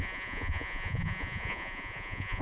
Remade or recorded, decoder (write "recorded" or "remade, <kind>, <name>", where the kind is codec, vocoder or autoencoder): remade, vocoder, Vocos